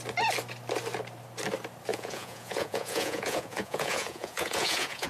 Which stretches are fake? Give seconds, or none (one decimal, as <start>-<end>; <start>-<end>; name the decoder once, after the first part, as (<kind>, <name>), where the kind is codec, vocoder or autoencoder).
1.9-5.1 (vocoder, Vocos)